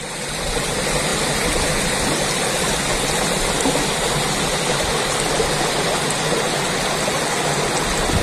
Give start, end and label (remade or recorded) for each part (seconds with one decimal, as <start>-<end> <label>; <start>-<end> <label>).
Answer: 0.0-8.2 recorded